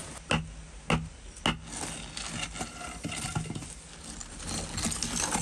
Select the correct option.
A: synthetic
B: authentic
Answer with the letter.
B